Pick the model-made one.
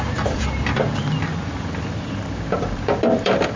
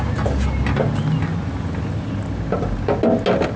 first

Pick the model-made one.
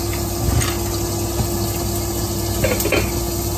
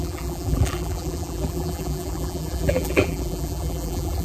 second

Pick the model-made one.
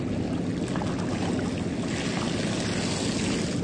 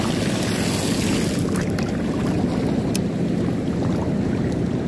second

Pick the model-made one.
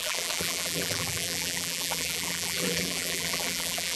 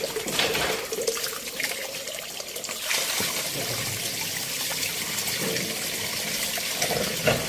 first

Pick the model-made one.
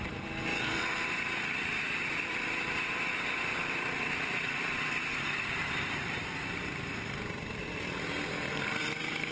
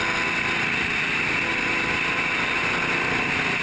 first